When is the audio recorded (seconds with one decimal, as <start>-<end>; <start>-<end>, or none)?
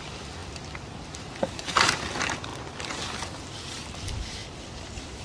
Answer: 2.5-3.4; 4.4-5.2